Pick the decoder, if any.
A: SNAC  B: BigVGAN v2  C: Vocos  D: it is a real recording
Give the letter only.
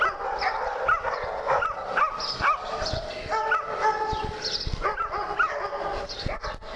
D